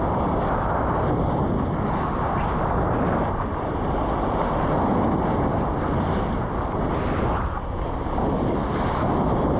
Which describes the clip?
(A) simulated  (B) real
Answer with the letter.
B